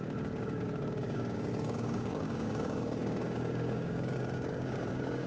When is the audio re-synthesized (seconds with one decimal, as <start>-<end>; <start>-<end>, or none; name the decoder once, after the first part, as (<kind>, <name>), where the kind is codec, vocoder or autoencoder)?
0.0-5.3 (codec, DAC)